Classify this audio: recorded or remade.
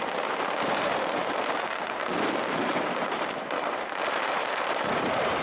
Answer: remade